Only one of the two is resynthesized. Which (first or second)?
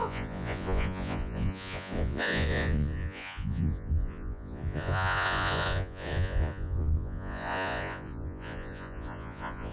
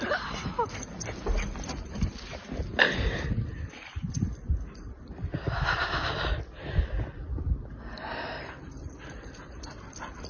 first